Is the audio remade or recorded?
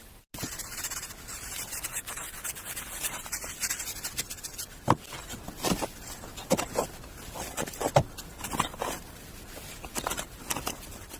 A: recorded